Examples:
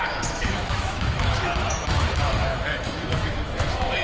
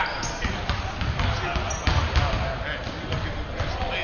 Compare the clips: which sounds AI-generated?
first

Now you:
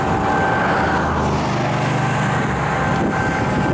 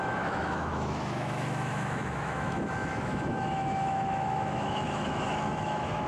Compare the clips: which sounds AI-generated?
second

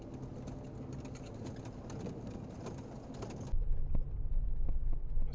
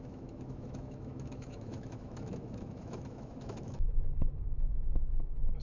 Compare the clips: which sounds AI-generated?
second